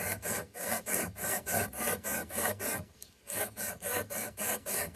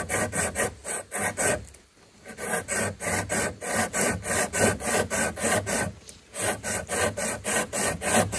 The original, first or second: second